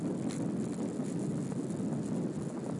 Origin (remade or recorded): recorded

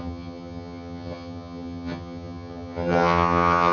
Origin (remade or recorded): remade